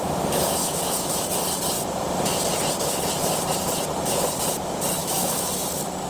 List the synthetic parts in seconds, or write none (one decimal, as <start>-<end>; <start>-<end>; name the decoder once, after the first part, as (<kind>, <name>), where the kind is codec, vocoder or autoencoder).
0.6-1.3 (autoencoder, DAC-VAE); 5.0-5.5